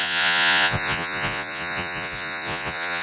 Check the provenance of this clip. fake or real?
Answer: fake